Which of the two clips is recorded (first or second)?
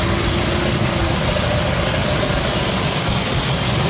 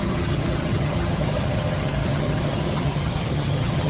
first